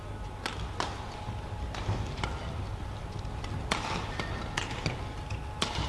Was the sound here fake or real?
real